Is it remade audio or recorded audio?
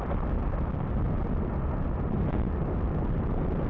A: recorded